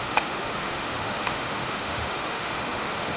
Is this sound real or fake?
fake